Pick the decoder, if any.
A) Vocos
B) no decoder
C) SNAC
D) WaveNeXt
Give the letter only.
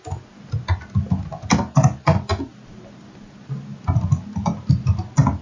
B